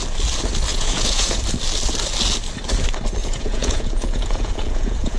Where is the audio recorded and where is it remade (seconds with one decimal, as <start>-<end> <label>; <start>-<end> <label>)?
0.0-0.7 recorded; 0.7-1.4 remade; 1.4-3.2 recorded; 3.2-5.2 remade